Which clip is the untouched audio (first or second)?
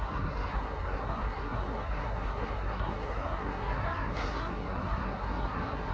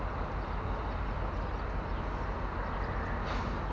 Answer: second